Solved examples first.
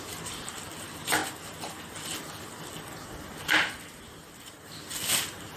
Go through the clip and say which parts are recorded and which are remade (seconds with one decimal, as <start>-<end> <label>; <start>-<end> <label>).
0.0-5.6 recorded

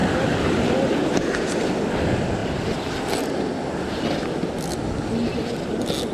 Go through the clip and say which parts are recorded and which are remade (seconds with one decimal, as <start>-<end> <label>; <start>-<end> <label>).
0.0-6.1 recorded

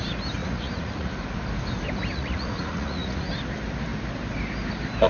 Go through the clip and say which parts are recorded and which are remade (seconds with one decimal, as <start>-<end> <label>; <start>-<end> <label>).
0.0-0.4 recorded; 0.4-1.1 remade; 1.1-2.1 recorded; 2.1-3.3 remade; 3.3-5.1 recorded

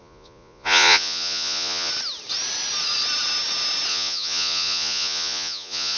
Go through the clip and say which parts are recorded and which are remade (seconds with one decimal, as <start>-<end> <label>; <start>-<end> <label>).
0.0-1.9 remade; 1.9-3.9 recorded; 3.9-6.0 remade